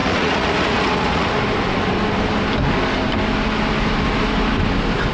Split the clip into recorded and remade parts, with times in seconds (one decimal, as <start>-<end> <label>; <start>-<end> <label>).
0.0-1.3 remade; 1.3-5.1 recorded